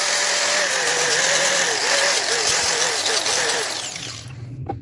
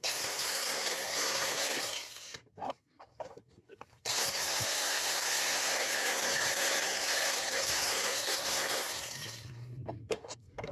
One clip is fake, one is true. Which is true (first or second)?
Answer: first